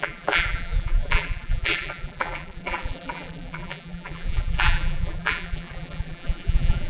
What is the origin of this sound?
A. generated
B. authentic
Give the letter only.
A